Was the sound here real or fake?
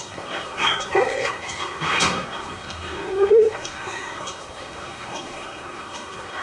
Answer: fake